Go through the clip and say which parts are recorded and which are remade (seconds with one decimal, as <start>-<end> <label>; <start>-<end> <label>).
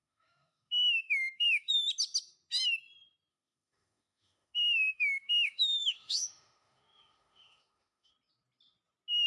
0.0-1.7 remade; 1.7-3.3 recorded; 3.3-8.1 remade; 8.1-9.3 recorded